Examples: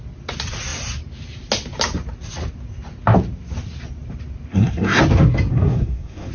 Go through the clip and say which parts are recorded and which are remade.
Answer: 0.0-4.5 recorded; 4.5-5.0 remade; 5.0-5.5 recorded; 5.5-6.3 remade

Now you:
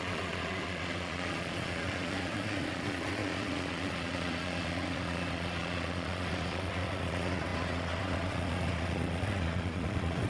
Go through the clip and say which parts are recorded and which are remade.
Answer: 0.0-10.3 remade